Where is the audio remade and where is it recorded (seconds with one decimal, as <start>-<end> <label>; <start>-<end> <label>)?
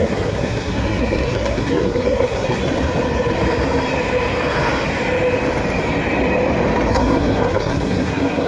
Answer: 0.0-2.6 remade; 2.6-6.9 recorded; 6.9-8.5 remade